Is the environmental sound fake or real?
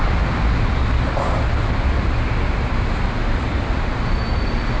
real